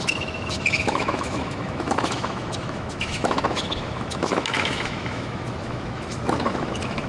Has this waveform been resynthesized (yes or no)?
yes